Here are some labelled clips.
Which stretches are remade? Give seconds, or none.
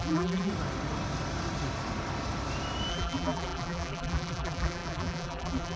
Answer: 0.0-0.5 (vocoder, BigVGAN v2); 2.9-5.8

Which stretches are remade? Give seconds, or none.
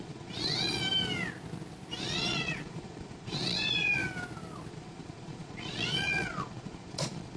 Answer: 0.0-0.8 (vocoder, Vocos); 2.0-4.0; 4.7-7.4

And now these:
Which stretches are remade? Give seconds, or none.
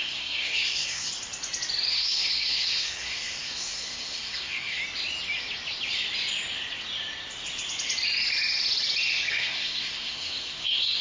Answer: 0.0-1.1 (codec, SNAC); 1.9-4.8; 9.3-11.0